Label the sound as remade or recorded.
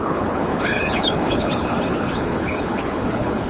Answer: remade